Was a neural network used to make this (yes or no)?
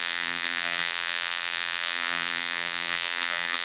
yes